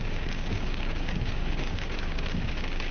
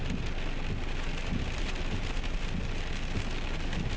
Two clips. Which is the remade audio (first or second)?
first